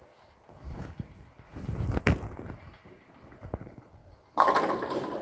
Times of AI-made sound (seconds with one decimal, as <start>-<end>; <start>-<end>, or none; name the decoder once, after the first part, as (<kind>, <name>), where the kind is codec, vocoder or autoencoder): none